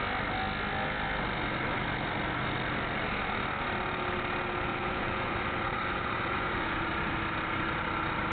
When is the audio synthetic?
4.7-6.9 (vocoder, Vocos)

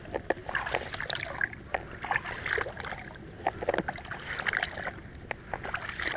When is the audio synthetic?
none

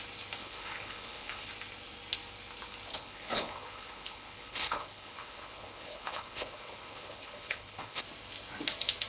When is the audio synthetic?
0.4-1.5 (codec, HILCodec); 2.9-8.0